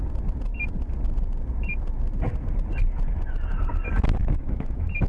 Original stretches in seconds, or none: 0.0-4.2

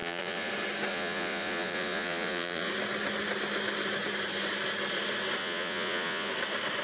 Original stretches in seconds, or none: 0.5-0.9; 2.7-5.4; 6.3-6.8

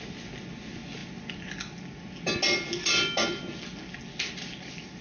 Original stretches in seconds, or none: 0.0-5.0

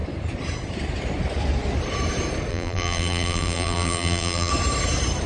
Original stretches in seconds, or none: 0.0-2.5; 4.5-5.3

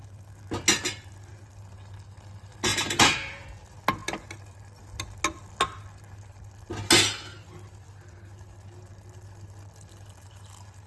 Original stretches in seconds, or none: 0.0-2.7; 3.5-10.9

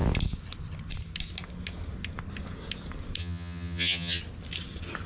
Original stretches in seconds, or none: 0.0-3.2; 4.2-5.1

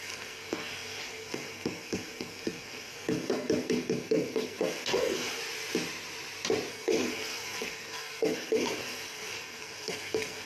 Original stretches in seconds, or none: 5.4-6.7